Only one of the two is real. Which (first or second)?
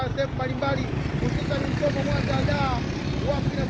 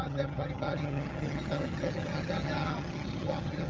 first